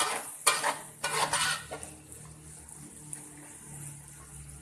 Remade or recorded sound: recorded